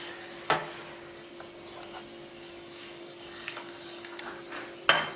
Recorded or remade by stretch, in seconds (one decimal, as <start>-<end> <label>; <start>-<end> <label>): 0.0-2.3 recorded; 2.3-4.2 remade; 4.2-5.2 recorded

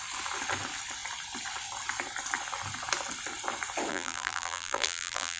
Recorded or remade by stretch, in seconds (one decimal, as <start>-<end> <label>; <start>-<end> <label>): 0.0-3.9 recorded; 3.9-5.4 remade

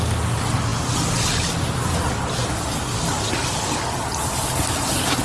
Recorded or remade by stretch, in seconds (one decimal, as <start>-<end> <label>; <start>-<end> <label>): 0.0-5.2 recorded